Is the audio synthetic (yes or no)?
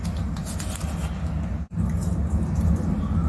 no